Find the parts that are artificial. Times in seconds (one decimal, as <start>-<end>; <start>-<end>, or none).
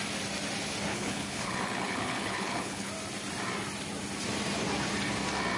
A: 0.9-2.9